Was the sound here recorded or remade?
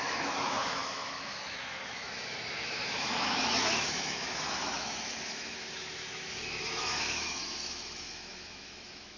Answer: remade